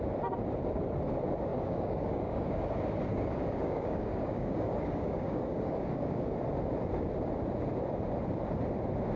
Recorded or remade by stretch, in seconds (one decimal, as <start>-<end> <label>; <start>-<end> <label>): 0.0-1.5 recorded; 1.5-2.7 remade; 2.7-3.1 recorded; 3.1-6.3 remade; 6.3-9.2 recorded